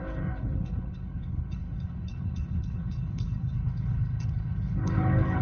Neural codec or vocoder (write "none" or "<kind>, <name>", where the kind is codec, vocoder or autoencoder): codec, HILCodec